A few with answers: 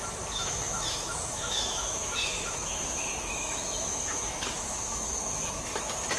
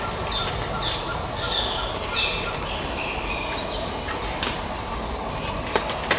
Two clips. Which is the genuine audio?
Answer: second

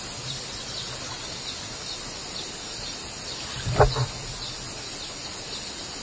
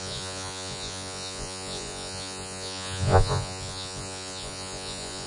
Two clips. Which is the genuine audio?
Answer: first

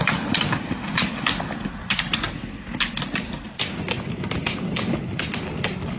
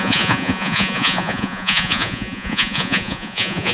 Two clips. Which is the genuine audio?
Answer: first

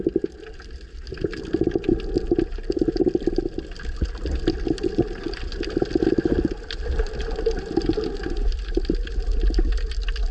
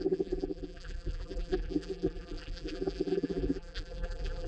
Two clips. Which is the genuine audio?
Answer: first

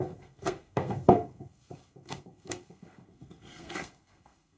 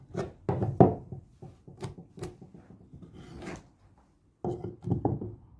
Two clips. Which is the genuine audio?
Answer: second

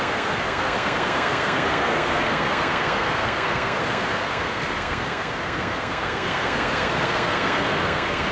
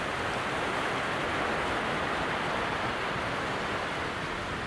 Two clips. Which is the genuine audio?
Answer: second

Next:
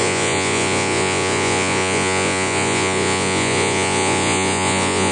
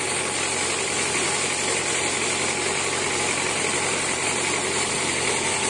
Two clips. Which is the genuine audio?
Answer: second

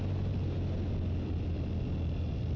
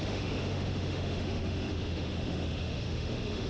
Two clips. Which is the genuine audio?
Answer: first